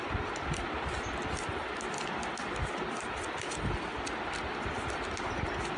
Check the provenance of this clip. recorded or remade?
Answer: recorded